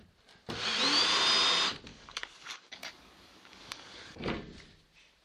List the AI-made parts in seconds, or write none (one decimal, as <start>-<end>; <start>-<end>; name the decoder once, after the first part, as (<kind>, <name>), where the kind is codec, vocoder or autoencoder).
1.9-4.2 (codec, DAC)

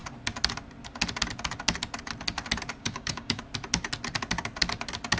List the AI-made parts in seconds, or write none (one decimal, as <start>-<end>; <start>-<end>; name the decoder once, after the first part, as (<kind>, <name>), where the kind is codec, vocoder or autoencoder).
2.8-3.4 (codec, DAC)

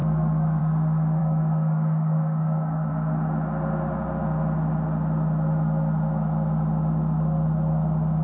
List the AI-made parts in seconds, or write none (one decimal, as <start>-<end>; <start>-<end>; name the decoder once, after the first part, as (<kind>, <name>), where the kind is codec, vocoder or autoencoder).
0.0-0.6 (codec, DAC); 1.2-2.9

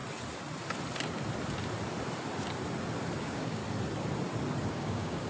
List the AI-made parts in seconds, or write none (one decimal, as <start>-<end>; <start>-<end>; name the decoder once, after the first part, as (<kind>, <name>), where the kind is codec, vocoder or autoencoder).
3.2-3.6 (codec, DAC); 4.7-5.3

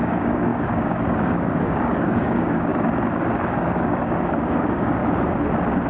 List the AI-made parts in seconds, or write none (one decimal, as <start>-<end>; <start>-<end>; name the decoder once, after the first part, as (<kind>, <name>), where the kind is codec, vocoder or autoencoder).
0.0-5.0 (codec, DAC)

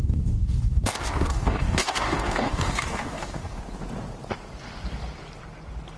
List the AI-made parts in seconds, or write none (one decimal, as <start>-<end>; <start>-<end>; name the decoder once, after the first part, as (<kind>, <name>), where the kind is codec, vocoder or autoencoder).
0.0-3.6 (codec, DAC)